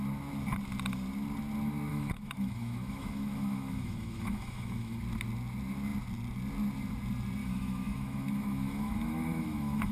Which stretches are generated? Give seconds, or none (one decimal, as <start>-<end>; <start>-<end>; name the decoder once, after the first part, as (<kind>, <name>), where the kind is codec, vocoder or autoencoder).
1.9-5.0 (autoencoder, DAC-VAE); 7.4-9.9

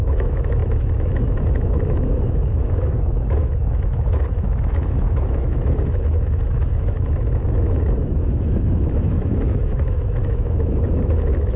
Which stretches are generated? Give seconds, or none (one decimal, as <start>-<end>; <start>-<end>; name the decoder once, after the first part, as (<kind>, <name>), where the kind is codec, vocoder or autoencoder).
0.0-11.6 (autoencoder, DAC-VAE)

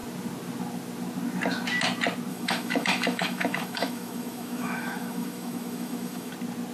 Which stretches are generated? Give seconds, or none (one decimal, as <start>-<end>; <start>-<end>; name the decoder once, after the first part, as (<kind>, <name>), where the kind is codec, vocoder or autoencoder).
2.3-6.3 (autoencoder, DAC-VAE)

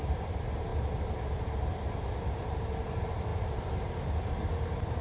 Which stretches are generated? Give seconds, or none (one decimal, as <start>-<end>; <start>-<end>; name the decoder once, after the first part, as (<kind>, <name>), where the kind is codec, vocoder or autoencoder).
none

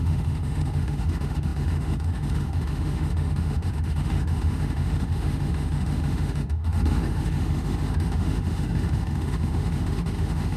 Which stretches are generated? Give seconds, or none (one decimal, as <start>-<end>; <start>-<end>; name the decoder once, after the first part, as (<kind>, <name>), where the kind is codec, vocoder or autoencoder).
0.0-10.6 (autoencoder, DAC-VAE)

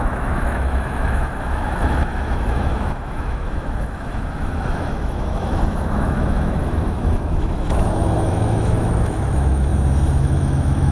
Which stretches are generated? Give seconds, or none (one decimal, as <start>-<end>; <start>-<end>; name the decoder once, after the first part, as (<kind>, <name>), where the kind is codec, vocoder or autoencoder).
0.0-9.7 (autoencoder, DAC-VAE); 10.2-10.9